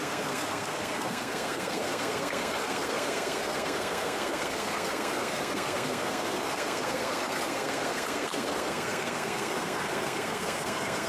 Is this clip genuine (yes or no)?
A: no